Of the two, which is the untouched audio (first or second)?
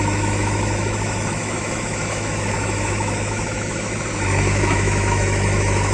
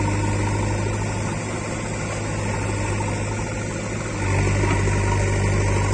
second